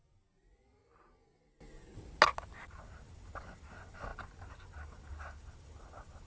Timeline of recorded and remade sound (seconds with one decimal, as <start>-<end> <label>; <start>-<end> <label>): 0.0-6.3 recorded